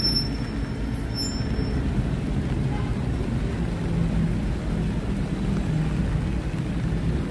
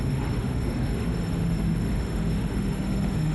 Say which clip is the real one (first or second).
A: first